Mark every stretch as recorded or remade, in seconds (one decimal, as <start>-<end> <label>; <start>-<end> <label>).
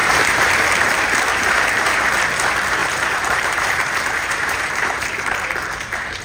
0.0-0.7 remade; 0.7-1.3 recorded; 1.3-2.0 remade; 2.0-2.8 recorded; 2.8-6.2 remade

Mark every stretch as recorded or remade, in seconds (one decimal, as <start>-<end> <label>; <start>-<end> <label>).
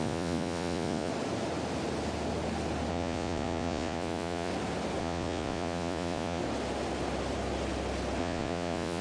0.0-1.1 remade; 1.1-2.9 recorded; 2.9-4.5 remade; 4.5-5.0 recorded; 5.0-6.4 remade; 6.4-8.2 recorded; 8.2-9.0 remade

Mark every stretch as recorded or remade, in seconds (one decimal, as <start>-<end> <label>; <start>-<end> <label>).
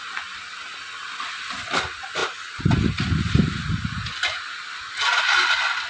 0.0-5.9 recorded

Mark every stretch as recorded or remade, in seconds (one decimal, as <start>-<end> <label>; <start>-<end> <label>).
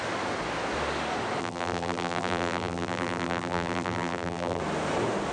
0.0-1.4 recorded; 1.4-4.6 remade; 4.6-5.3 recorded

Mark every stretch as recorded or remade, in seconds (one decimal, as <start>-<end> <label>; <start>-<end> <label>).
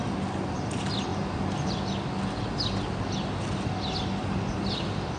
0.0-5.2 recorded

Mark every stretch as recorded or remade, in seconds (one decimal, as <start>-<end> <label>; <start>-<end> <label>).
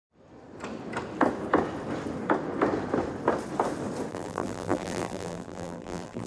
0.0-4.1 recorded; 4.1-6.3 remade